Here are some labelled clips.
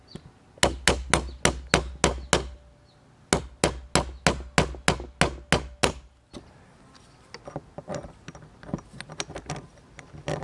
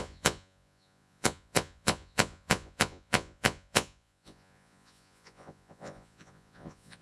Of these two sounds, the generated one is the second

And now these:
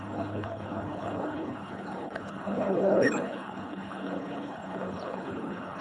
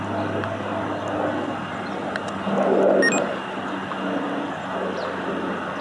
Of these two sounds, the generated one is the first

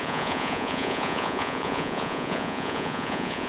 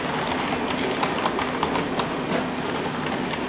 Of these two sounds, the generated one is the first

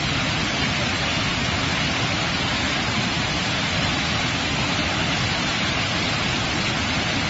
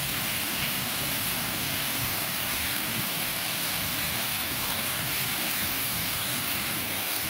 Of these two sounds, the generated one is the second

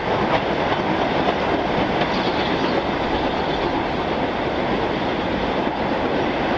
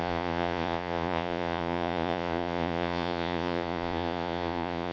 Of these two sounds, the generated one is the second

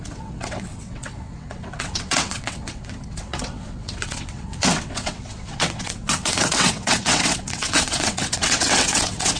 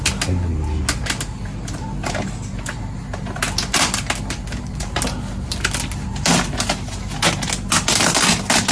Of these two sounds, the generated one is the first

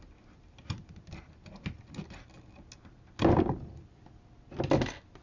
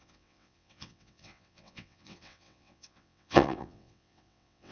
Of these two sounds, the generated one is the second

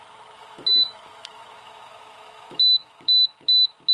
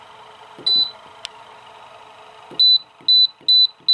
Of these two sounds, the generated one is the first